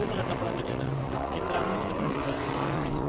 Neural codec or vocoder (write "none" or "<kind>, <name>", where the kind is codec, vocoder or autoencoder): vocoder, WaveNeXt